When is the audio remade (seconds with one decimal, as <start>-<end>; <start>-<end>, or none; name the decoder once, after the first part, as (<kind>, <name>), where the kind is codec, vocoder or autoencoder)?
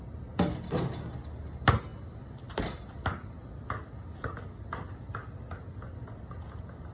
none